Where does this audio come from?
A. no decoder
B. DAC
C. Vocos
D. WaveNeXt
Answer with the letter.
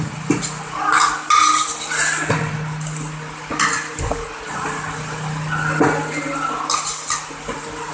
A